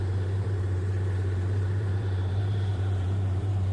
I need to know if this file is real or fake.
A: fake